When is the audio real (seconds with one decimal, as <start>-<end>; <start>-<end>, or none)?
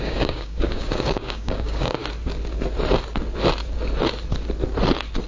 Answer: 2.0-5.3